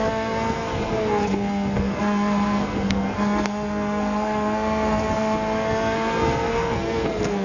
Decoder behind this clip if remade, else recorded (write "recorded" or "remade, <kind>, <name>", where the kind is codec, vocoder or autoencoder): remade, codec, SNAC